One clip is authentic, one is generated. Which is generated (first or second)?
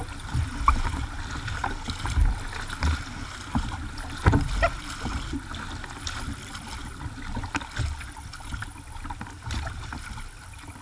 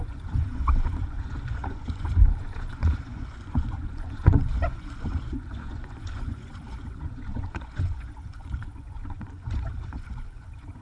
second